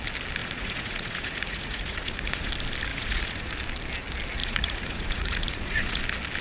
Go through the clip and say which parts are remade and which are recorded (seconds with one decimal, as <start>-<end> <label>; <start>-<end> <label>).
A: 0.0-0.4 recorded; 0.4-2.5 remade; 2.5-2.9 recorded; 2.9-3.5 remade; 3.5-4.4 recorded; 4.4-6.0 remade; 6.0-6.4 recorded